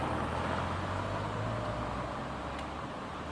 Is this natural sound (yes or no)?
yes